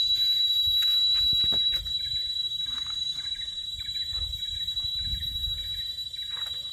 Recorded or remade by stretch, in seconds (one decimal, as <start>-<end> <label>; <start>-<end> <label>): 0.0-6.7 recorded